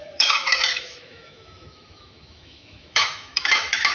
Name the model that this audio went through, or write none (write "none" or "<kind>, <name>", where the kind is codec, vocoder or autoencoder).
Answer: autoencoder, DAC-VAE